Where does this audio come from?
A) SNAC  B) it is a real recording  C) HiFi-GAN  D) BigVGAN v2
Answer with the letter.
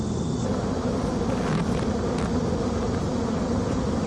B